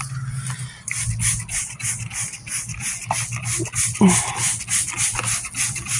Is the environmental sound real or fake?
real